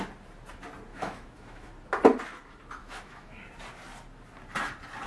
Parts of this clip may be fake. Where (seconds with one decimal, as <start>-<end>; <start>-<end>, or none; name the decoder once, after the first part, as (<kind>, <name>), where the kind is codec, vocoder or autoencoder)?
0.9-1.7 (autoencoder, DAC-VAE); 2.8-3.4